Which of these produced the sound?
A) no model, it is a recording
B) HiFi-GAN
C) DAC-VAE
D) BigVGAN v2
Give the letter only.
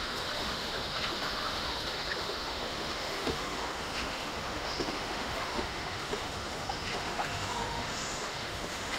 C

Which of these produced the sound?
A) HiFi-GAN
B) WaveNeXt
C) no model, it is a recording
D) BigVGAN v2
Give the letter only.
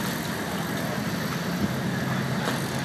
C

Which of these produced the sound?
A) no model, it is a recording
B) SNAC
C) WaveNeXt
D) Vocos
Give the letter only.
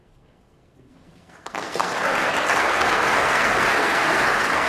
B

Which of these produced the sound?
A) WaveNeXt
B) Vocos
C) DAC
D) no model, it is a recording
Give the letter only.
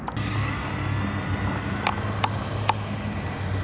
D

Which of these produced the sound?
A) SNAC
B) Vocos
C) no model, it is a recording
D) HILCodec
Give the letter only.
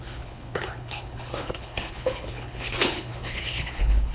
D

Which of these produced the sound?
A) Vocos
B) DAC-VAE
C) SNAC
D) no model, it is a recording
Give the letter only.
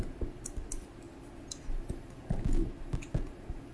D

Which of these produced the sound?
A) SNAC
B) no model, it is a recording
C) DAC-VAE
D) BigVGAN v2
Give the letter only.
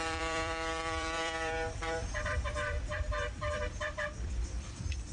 D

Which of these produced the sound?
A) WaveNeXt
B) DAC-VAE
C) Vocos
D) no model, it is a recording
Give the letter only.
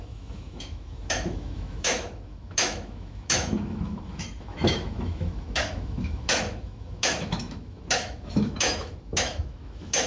B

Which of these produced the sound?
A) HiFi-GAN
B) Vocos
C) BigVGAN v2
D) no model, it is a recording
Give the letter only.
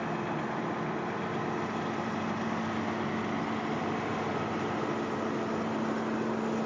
D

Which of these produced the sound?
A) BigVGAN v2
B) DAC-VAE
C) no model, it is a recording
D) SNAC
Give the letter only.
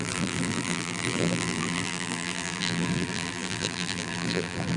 A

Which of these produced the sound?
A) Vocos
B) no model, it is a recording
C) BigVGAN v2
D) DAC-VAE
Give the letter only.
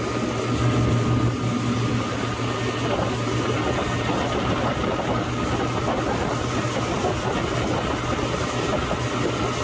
B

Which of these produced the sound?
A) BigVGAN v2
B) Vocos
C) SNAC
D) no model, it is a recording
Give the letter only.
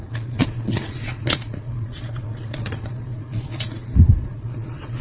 B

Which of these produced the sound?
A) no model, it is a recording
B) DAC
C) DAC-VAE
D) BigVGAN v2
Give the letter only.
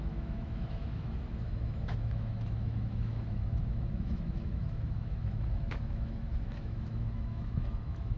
C